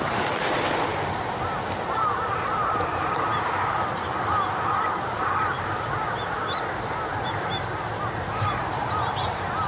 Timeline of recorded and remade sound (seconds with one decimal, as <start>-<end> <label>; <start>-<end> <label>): 0.0-9.7 recorded

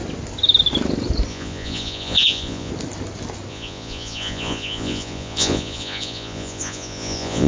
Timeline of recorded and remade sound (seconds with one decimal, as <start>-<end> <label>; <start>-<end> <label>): 0.0-1.3 recorded; 1.3-2.7 remade; 2.7-3.5 recorded; 3.5-7.5 remade

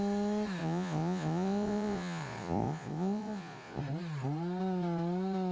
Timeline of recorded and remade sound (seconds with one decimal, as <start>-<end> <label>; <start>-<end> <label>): 0.0-0.6 recorded; 0.6-3.8 remade; 3.8-5.5 recorded

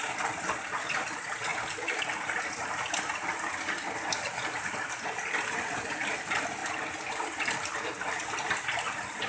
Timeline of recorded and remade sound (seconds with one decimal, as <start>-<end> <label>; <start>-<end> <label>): 0.0-9.3 recorded